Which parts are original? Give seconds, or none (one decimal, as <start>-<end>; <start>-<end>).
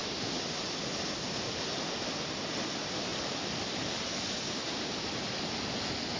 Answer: 0.0-3.1; 5.4-6.2